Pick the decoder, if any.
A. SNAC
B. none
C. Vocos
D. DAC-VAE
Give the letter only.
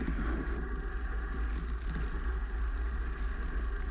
B